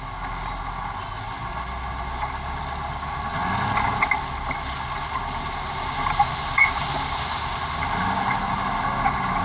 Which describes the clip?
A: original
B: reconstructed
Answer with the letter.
A